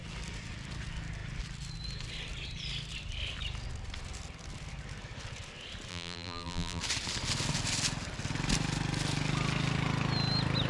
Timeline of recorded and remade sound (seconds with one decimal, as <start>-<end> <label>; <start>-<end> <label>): 0.0-5.9 recorded; 5.9-6.8 remade; 6.8-10.7 recorded